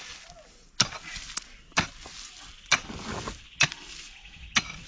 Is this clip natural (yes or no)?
yes